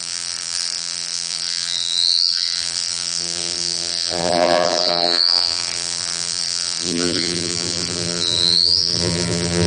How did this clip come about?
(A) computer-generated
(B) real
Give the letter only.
A